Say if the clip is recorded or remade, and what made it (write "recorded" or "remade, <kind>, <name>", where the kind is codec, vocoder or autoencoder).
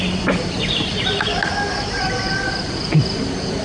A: remade, vocoder, BigVGAN v2